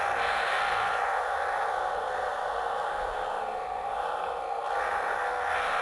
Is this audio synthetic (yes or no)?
yes